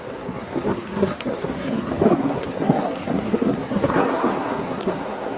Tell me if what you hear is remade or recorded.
remade